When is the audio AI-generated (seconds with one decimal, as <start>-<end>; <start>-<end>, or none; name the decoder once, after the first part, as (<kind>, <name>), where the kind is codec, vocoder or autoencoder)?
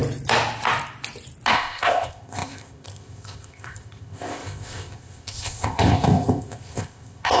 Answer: 1.5-7.4 (codec, ZipCodec)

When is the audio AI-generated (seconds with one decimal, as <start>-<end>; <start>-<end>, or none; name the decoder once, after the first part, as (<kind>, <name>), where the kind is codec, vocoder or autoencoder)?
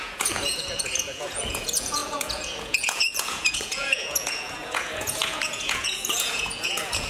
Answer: 0.0-7.1 (vocoder, Vocos)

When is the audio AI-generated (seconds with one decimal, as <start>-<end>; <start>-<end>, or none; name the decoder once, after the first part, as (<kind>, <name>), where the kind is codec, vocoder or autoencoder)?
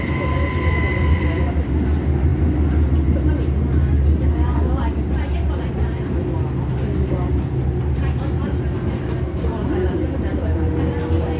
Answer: none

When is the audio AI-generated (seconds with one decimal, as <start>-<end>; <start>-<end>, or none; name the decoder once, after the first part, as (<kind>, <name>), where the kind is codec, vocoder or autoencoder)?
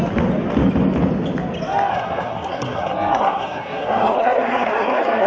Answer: 1.9-5.3 (codec, SNAC)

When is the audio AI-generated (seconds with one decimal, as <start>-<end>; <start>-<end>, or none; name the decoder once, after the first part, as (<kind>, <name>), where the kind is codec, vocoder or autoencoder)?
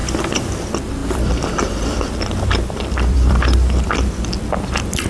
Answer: 1.0-4.1 (vocoder, BigVGAN v2)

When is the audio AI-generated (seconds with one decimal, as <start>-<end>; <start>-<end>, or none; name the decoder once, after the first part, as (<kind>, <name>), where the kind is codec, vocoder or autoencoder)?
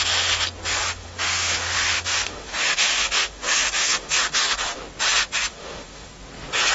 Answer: 0.8-4.8 (autoencoder, DAC-VAE); 5.5-6.1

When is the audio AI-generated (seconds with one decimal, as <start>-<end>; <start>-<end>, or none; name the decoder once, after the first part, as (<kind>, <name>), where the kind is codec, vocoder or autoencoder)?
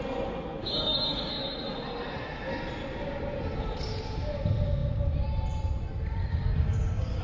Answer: 0.6-1.3 (codec, DAC); 6.2-7.2